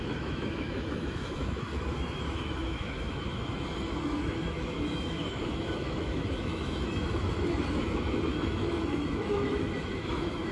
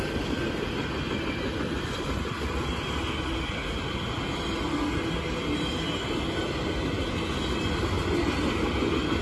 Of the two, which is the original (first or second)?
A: second